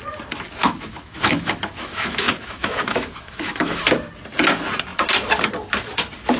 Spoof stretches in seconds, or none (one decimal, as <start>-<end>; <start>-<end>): 0.6-3.8